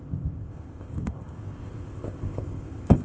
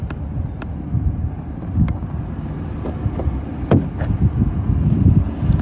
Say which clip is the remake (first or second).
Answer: first